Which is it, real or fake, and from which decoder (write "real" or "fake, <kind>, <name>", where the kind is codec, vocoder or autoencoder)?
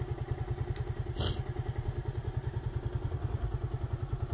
real